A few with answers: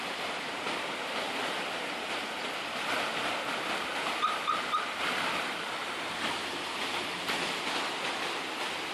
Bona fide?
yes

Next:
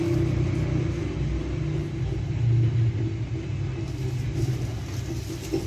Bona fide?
yes